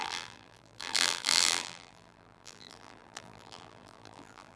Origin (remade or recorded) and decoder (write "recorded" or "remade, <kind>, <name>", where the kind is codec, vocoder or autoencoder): remade, vocoder, BigVGAN v2